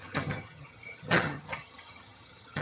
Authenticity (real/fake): fake